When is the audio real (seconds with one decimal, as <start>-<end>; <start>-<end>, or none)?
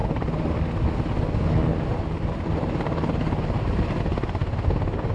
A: 0.6-1.7; 4.0-5.1